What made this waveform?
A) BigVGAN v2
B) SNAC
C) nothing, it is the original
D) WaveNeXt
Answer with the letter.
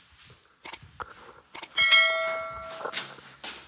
C